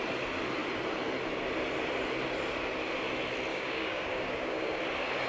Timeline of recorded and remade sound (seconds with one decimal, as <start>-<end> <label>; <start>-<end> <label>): 0.0-3.5 recorded; 3.5-4.8 remade; 4.8-5.3 recorded